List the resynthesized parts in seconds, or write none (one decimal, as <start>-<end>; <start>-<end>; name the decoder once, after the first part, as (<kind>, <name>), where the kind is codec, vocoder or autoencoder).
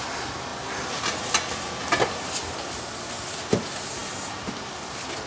none